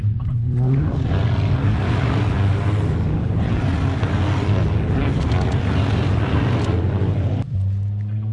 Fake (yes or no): no